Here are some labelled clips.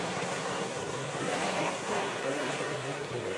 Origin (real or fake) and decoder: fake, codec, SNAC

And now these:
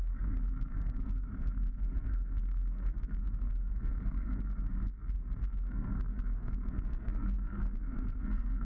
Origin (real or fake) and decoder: fake, codec, SNAC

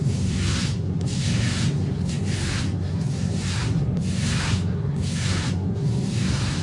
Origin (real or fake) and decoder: fake, codec, SNAC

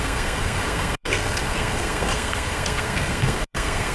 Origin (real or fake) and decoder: fake, codec, SNAC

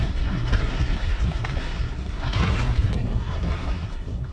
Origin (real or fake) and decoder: fake, codec, SNAC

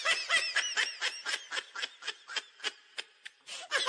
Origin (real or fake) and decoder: real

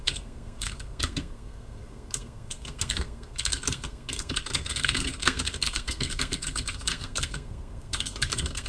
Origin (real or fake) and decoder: fake, codec, SNAC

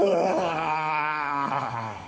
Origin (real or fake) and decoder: fake, codec, SNAC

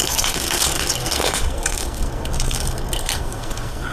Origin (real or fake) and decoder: fake, codec, SNAC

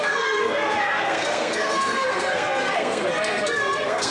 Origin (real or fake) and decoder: fake, codec, SNAC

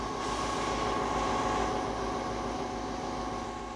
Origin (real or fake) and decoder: real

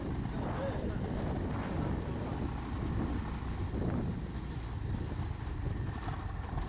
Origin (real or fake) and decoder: real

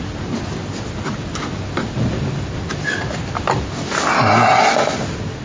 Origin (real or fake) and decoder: real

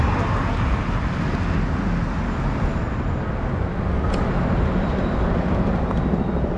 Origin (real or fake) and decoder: real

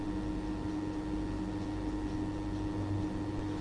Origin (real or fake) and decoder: real